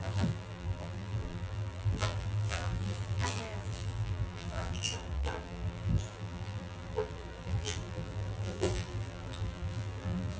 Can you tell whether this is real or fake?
fake